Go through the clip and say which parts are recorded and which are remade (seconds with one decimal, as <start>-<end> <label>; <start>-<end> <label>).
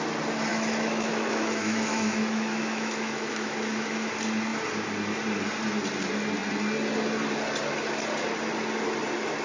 0.0-0.5 recorded; 0.5-4.1 remade; 4.1-9.4 recorded